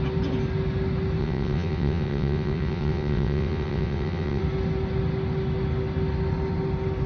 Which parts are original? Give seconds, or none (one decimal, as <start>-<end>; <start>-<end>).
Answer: 0.0-1.2; 4.4-7.1

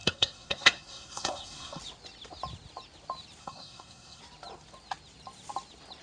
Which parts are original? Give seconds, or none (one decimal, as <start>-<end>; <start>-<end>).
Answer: 1.8-3.4; 4.2-6.0

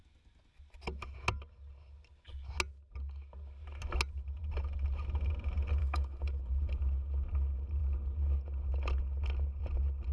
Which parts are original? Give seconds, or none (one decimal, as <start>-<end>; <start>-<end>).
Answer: 0.0-5.8; 6.4-10.1

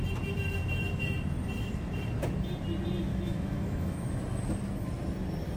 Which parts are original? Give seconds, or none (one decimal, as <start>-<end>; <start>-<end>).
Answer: 0.0-3.1; 4.2-5.6

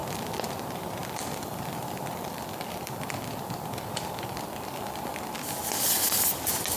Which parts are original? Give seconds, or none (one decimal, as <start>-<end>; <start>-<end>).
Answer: 0.5-1.0; 5.1-6.8

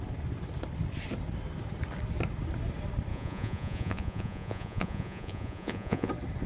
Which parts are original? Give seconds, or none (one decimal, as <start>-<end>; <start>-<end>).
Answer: 0.0-3.1; 6.1-6.5

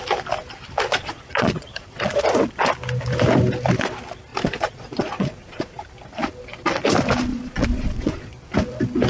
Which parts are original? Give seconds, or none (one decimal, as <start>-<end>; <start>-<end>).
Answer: 0.0-0.9; 2.2-4.3; 5.8-7.3; 8.3-9.1